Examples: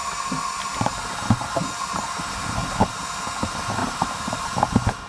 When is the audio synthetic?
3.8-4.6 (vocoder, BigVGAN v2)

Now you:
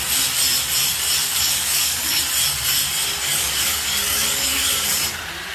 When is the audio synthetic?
1.2-2.2 (codec, DAC); 3.3-4.9